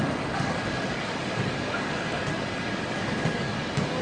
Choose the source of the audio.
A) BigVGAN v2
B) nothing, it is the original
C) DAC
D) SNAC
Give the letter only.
C